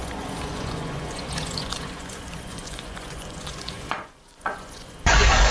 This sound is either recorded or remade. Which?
remade